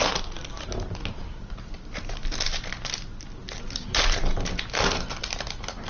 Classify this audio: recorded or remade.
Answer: recorded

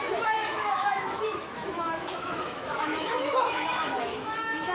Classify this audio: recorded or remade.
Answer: remade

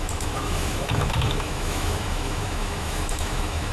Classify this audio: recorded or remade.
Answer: remade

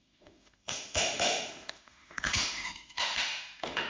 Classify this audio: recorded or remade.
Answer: remade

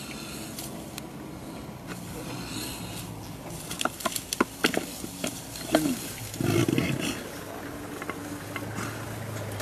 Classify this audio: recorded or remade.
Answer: recorded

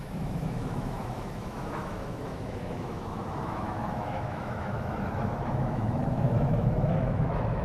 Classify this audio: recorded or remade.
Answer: remade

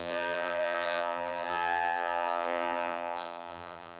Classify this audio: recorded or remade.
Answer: remade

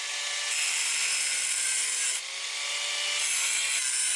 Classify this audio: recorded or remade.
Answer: recorded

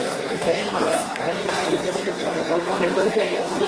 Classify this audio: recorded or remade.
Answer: remade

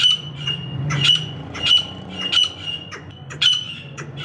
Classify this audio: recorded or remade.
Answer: remade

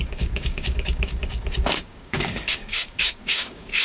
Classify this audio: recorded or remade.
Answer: remade